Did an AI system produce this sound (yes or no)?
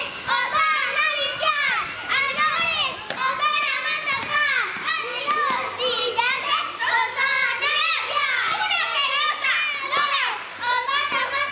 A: no